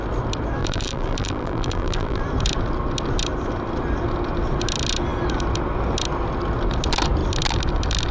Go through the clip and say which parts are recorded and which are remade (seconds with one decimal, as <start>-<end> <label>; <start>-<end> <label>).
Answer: 0.0-0.6 recorded; 0.6-2.2 remade; 2.2-8.1 recorded